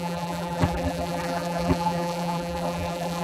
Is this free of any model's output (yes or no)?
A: no